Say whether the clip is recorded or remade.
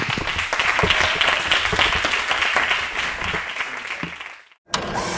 recorded